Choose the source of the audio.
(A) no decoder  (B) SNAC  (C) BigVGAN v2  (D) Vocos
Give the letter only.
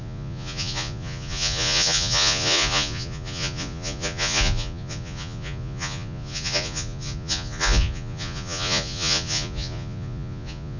D